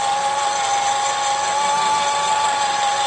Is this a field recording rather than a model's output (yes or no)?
yes